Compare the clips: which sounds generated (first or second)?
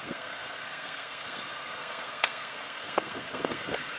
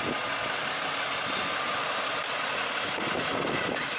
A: first